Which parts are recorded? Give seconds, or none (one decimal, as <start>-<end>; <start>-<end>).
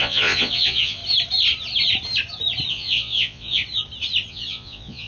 1.0-2.7; 3.6-4.3